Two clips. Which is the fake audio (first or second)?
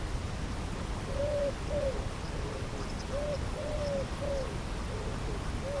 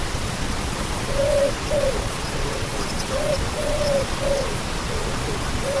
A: second